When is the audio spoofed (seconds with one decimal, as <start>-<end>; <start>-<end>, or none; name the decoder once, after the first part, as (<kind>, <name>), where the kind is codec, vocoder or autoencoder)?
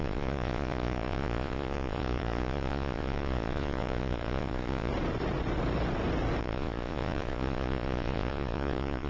0.0-4.9 (vocoder, Vocos); 6.4-9.1